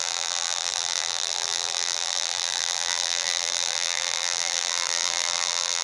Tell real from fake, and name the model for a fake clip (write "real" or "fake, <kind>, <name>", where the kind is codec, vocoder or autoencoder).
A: fake, vocoder, BigVGAN v2